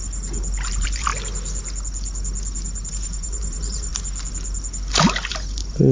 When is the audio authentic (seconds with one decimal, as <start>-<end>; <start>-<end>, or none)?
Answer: 0.0-0.7; 1.1-2.9; 3.9-5.3